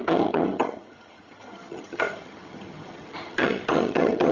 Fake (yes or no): yes